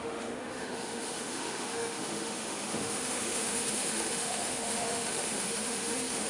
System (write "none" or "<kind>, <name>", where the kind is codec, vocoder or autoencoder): autoencoder, DAC-VAE